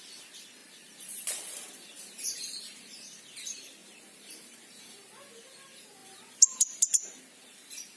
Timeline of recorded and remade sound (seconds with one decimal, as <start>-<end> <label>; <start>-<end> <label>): 0.0-0.6 recorded; 0.6-3.2 remade; 3.2-3.8 recorded; 3.8-5.2 remade; 5.2-6.0 recorded; 6.0-7.2 remade; 7.2-8.0 recorded